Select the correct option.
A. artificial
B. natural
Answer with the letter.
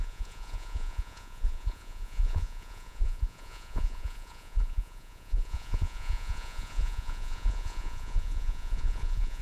A